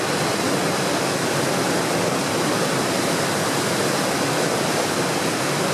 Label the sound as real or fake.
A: real